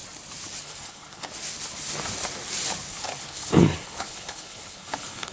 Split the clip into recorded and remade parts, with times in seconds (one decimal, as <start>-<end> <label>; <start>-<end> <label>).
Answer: 0.0-0.6 recorded; 0.6-1.3 remade; 1.3-2.9 recorded; 2.9-5.3 remade